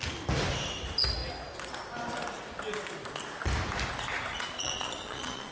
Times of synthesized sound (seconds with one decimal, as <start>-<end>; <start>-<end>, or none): 4.3-5.5